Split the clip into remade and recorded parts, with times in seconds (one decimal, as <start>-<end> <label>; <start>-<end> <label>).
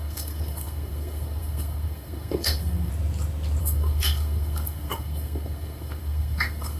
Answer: 0.0-2.9 remade; 2.9-3.6 recorded; 3.6-6.8 remade